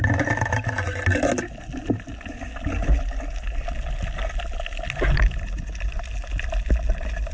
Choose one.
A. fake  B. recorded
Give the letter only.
B